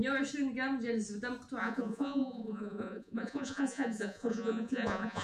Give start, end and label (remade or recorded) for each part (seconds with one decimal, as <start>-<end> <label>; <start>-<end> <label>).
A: 0.0-1.6 recorded; 1.6-5.2 remade